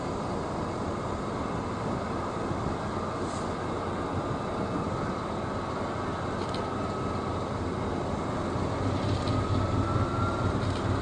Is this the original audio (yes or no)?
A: yes